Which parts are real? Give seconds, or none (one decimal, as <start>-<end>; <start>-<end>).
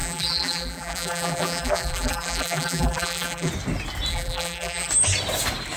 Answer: 3.5-4.1; 4.9-5.8